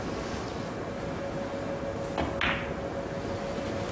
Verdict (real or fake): real